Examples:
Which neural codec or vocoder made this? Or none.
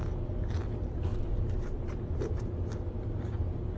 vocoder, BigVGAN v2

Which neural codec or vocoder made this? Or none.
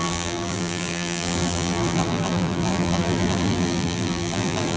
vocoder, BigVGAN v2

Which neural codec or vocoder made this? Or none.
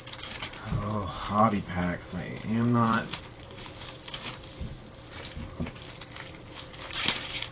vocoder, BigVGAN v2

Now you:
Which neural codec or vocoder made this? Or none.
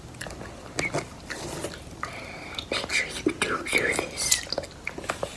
none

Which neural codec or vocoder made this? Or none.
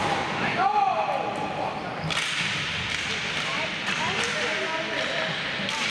none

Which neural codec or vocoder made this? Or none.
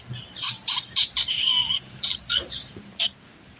vocoder, BigVGAN v2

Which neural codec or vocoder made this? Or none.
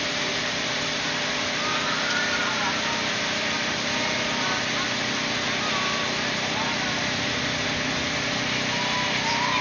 none